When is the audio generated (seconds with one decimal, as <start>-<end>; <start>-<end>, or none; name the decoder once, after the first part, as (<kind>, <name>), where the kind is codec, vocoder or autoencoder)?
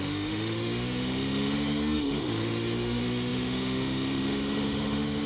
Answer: 0.0-5.3 (autoencoder, DAC-VAE)